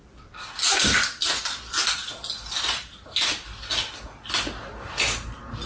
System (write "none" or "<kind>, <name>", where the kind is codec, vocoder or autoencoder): none